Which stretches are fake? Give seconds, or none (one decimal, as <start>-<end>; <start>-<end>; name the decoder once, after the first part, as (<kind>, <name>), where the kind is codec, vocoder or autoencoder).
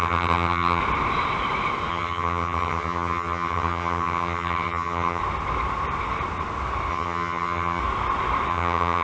0.0-0.8 (vocoder, HiFi-GAN); 1.9-5.2; 6.9-7.8; 8.5-9.0